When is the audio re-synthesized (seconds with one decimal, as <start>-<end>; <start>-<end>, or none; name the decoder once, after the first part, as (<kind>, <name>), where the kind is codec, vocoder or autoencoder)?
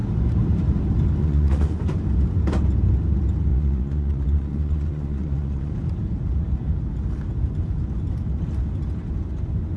1.2-1.8 (vocoder, Vocos); 3.5-5.7